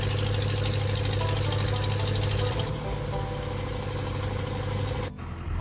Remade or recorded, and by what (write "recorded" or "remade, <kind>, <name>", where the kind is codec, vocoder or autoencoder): recorded